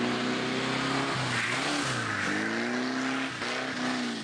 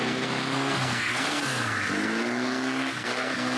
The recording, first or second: first